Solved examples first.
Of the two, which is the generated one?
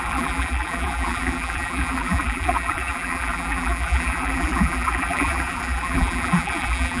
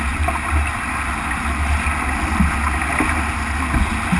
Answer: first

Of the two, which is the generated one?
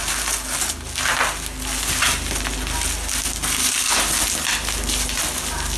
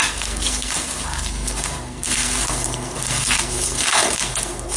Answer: second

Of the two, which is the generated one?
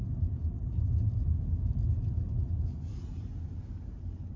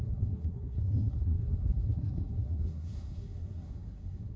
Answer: second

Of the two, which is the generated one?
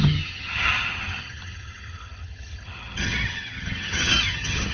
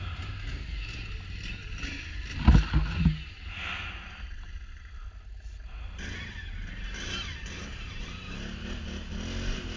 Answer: first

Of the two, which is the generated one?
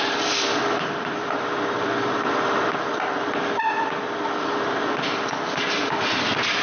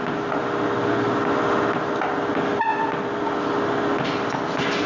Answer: first